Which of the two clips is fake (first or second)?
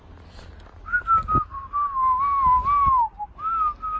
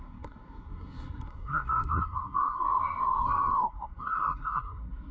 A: second